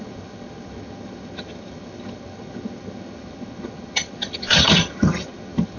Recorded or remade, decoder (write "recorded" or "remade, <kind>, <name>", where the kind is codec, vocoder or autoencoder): remade, vocoder, HiFi-GAN